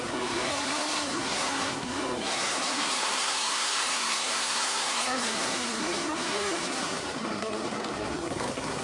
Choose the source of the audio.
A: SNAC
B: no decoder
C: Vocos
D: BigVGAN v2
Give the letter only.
A